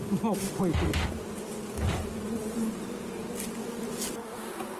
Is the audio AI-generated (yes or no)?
no